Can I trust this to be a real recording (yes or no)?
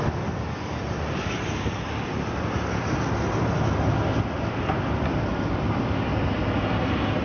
yes